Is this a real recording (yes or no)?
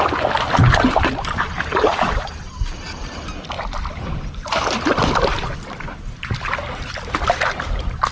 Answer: yes